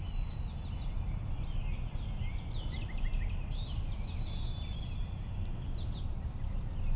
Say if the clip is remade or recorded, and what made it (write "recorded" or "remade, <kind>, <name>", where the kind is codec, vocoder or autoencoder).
recorded